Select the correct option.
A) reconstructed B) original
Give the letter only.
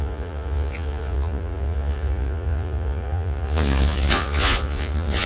A